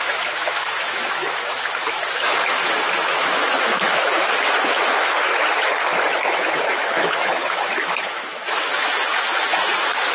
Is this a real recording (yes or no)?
no